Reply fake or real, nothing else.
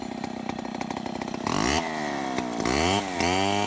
real